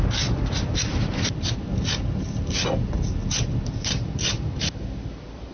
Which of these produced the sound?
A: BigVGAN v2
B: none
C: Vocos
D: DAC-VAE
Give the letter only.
B